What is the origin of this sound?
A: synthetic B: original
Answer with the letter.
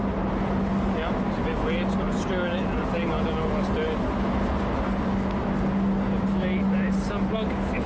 B